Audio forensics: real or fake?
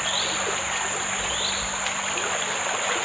real